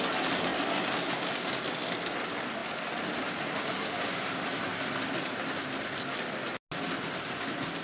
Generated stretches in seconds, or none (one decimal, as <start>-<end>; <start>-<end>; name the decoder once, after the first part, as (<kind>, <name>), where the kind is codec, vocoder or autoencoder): none